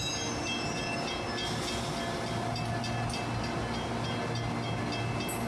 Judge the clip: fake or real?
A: real